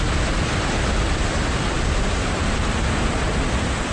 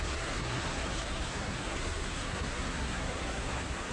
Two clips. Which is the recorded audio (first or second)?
first